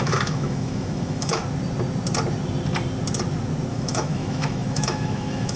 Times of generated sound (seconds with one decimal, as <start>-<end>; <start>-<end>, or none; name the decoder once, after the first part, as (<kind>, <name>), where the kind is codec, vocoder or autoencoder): 0.0-1.4 (autoencoder, DAC-VAE); 3.7-5.6